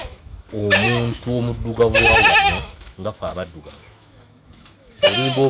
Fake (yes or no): yes